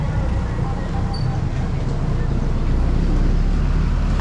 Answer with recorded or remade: recorded